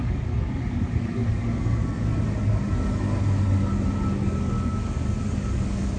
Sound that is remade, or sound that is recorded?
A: remade